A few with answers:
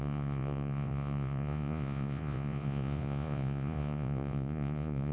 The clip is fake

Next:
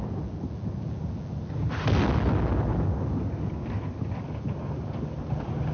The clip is real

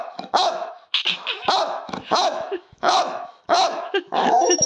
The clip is fake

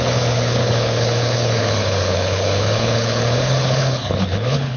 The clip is fake